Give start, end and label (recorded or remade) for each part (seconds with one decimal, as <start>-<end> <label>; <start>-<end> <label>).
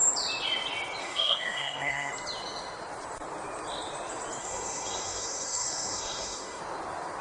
0.0-1.0 recorded; 1.0-2.1 remade; 2.1-4.4 recorded; 4.4-6.6 remade; 6.6-7.2 recorded